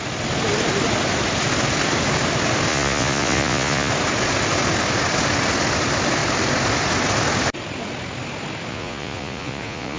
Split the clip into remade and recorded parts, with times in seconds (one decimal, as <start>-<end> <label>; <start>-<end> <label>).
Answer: 0.0-2.7 recorded; 2.7-3.9 remade; 3.9-8.7 recorded; 8.7-10.0 remade